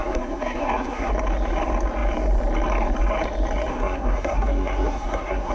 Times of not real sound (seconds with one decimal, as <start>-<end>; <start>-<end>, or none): 0.0-1.1; 3.7-5.5